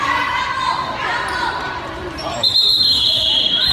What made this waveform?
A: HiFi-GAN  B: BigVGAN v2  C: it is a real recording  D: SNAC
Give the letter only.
B